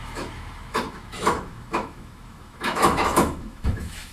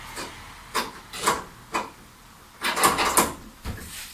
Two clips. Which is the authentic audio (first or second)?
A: second